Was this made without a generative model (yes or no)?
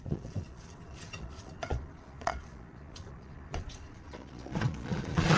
no